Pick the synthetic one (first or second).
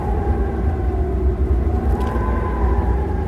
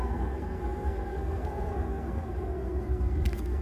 second